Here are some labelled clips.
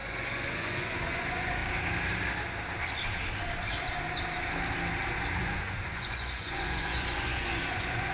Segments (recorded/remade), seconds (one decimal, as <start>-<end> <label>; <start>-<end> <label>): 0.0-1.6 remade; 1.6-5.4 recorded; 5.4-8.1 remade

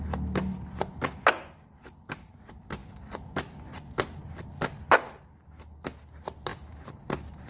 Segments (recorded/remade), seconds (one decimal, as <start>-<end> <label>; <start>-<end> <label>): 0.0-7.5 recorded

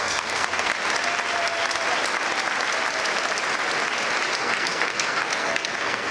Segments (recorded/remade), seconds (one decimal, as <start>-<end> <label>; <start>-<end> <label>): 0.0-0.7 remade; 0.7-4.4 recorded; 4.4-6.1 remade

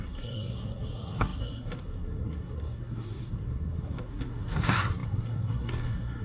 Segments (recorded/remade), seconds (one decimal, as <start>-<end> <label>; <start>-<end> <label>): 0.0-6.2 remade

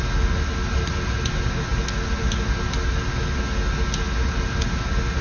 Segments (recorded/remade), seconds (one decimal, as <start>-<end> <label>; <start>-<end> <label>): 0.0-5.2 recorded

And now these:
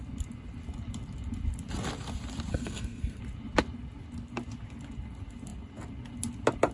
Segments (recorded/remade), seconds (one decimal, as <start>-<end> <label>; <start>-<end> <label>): 0.0-2.5 recorded; 2.5-3.2 remade; 3.2-6.7 recorded

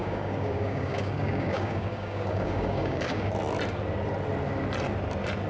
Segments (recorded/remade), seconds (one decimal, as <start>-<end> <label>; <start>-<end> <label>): 0.0-3.3 remade; 3.3-5.5 recorded

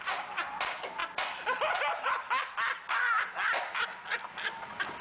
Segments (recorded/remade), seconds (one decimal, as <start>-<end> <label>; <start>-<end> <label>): 0.0-5.0 recorded